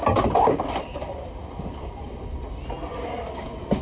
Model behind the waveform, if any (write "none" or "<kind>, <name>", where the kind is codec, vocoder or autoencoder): none